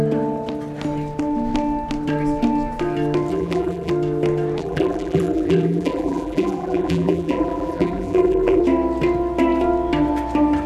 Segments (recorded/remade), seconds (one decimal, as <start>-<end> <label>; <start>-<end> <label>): 0.0-3.3 recorded; 3.3-3.9 remade; 3.9-4.6 recorded; 4.6-8.6 remade; 8.6-10.7 recorded